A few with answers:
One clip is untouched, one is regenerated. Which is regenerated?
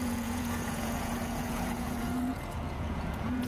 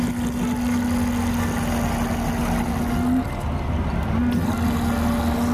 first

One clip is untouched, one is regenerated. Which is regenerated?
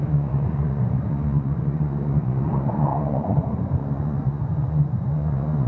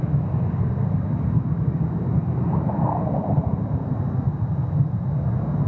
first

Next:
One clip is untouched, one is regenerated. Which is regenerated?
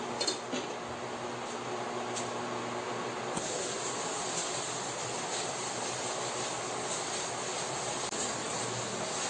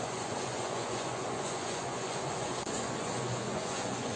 second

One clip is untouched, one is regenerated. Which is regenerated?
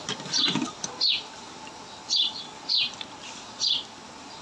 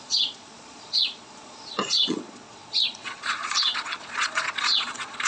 second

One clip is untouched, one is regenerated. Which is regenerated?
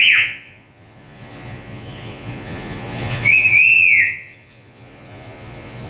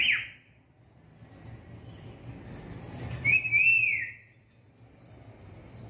first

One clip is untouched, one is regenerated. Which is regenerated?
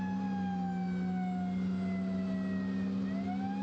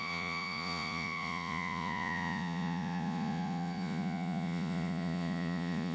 second